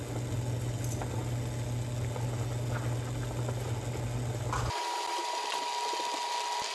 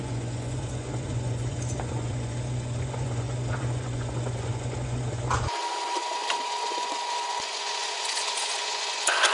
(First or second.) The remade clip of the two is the second